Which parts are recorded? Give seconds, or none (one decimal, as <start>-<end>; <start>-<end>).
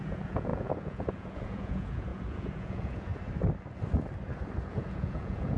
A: 3.1-4.7